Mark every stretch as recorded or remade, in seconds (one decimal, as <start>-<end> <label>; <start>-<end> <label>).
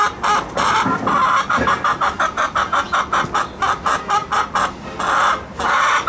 0.0-6.1 recorded